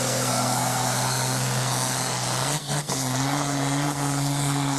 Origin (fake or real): fake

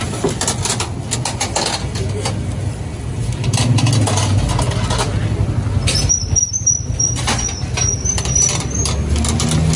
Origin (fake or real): real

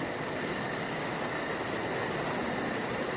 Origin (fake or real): real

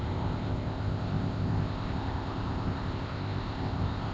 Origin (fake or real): fake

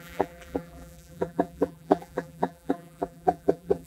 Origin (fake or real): fake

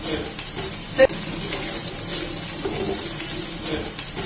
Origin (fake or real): real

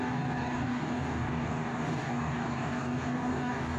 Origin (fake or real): fake